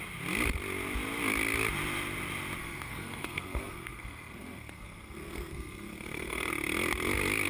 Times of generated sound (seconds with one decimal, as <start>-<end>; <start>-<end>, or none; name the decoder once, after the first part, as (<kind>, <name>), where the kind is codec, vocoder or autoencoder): 2.6-6.5 (codec, SNAC)